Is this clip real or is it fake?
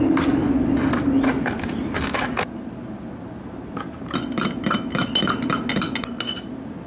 real